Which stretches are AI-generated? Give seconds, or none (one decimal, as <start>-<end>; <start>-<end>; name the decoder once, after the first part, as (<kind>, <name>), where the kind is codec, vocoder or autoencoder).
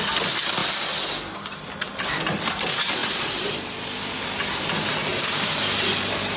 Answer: 3.0-3.8 (vocoder, BigVGAN v2); 5.1-6.4